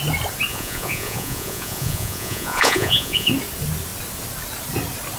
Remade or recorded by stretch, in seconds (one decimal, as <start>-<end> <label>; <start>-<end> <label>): 0.0-0.5 recorded; 0.5-3.3 remade; 3.3-5.2 recorded